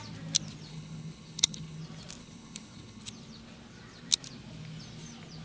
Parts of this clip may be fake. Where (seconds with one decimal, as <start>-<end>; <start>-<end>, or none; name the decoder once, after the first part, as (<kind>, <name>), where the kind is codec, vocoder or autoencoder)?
0.7-1.8 (codec, HILCodec); 2.2-3.0